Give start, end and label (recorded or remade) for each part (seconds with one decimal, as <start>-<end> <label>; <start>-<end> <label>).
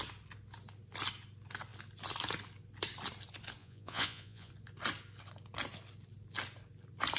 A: 0.0-3.6 recorded; 3.6-4.5 remade; 4.5-7.2 recorded